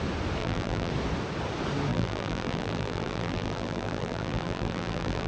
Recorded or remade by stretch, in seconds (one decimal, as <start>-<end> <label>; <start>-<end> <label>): 0.0-0.4 recorded; 0.4-0.9 remade; 0.9-1.9 recorded; 1.9-5.3 remade